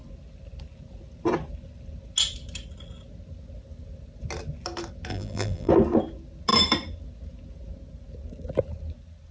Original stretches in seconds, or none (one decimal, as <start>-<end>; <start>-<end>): 0.0-5.1; 5.7-9.3